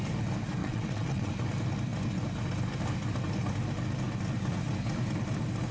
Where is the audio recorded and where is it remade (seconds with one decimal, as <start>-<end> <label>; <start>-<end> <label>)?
0.0-0.6 recorded; 0.6-1.3 remade; 1.3-5.7 recorded